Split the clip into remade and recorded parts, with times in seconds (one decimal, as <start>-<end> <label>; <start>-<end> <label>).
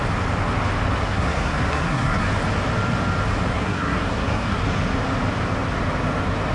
0.0-1.0 recorded; 1.0-2.3 remade; 2.3-3.5 recorded; 3.5-4.6 remade; 4.6-6.5 recorded